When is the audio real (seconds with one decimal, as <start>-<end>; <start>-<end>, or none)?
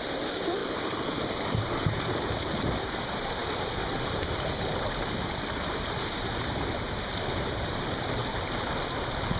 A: 0.6-1.4; 8.2-9.0